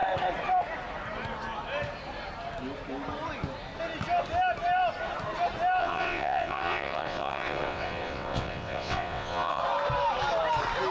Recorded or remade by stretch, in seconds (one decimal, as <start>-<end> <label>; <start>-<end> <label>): 0.0-5.8 recorded; 5.8-9.6 remade; 9.6-10.9 recorded